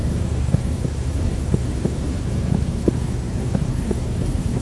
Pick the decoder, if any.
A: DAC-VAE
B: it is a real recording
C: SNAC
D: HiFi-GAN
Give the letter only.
C